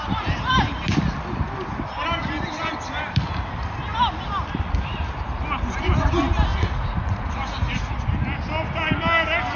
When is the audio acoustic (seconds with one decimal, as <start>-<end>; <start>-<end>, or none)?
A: 0.0-6.5; 7.9-9.6